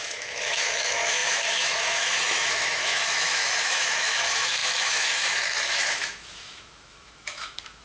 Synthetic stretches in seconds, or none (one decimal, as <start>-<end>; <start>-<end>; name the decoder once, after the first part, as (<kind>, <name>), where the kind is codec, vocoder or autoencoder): 0.0-7.8 (autoencoder, DAC-VAE)